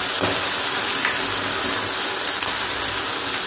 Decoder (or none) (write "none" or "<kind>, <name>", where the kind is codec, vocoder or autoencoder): none